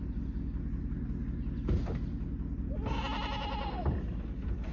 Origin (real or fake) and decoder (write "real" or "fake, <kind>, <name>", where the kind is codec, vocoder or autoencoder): real